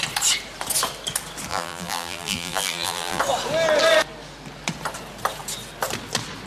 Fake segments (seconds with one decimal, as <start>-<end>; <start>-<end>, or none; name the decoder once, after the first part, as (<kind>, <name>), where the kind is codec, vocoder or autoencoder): 1.5-3.2 (vocoder, BigVGAN v2)